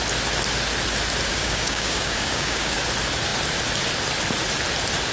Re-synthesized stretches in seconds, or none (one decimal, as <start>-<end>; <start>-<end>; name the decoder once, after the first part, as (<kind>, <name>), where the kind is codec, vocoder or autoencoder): 1.3-2.8 (codec, DAC)